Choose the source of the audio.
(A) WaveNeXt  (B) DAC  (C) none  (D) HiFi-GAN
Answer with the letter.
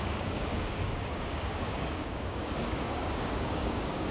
B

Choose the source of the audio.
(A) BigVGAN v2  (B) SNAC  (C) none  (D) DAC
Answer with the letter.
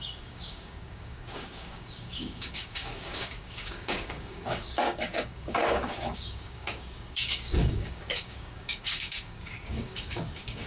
D